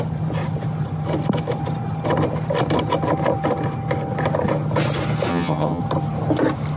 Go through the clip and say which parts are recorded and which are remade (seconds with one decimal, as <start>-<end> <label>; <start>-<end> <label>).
0.0-5.3 recorded; 5.3-5.8 remade; 5.8-6.8 recorded

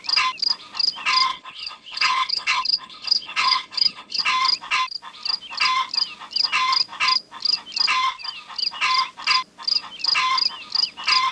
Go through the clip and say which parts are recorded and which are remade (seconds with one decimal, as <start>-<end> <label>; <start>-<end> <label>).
0.0-1.3 recorded; 1.3-4.2 remade; 4.2-11.3 recorded